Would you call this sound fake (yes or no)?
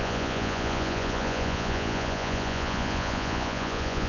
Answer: yes